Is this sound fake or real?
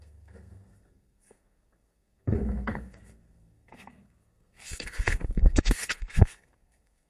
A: fake